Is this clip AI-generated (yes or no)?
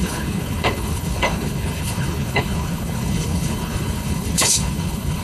yes